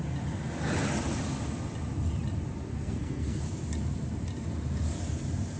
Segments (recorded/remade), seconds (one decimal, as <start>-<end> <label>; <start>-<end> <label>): 0.0-2.7 recorded; 2.7-3.4 remade; 3.4-5.6 recorded